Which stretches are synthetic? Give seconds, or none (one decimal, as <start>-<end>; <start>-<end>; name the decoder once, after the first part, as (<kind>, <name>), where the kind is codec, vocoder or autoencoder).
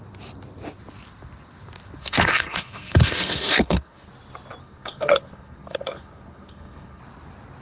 2.0-4.1 (codec, SNAC); 4.6-7.0